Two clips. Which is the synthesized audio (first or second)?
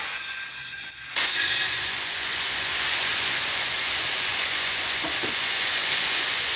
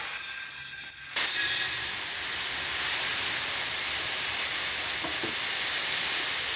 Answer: first